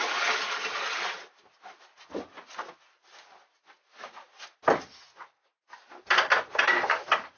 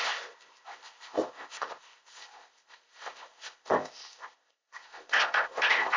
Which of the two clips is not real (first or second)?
second